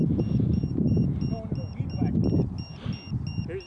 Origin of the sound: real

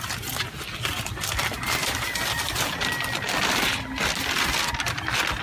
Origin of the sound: real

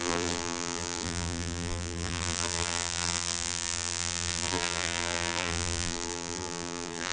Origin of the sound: fake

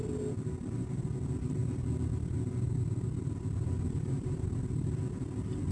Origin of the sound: real